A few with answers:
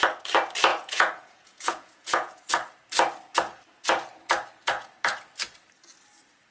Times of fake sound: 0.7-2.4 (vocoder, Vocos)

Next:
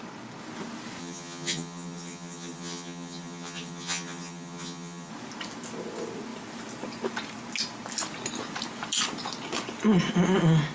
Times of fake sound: 1.0-5.1 (vocoder, HiFi-GAN)

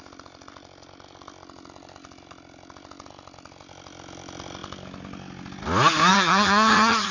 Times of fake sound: 6.1-7.1 (vocoder, HiFi-GAN)

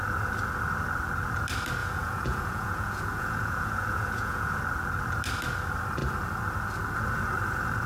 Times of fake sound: 1.8-4.6 (vocoder, Vocos)

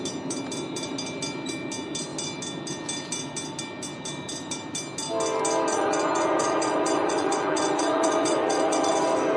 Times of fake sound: 5.7-8.9 (vocoder, Vocos)

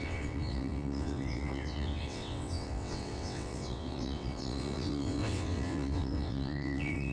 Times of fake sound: 0.0-7.1 (vocoder, WaveNeXt)